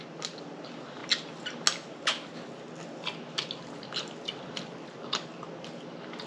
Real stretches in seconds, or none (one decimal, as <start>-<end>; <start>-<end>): 0.0-6.3